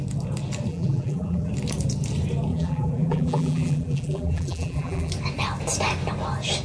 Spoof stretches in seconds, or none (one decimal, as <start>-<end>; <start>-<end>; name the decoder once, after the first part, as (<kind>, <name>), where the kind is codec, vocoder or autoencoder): 0.7-1.5 (vocoder, BigVGAN v2); 2.5-5.1